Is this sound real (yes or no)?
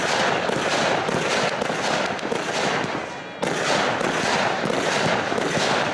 yes